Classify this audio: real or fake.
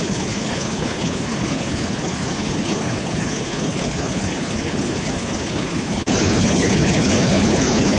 fake